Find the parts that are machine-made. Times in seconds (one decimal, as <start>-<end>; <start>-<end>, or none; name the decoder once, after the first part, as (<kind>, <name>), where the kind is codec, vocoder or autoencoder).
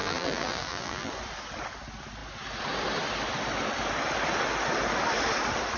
0.0-1.1 (vocoder, BigVGAN v2)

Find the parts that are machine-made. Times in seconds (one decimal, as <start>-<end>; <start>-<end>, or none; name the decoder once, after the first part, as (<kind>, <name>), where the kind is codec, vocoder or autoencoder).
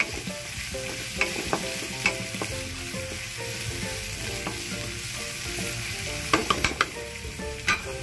6.4-8.0 (vocoder, BigVGAN v2)